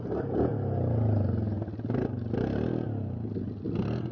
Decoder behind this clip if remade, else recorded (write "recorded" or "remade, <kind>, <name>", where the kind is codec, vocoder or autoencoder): recorded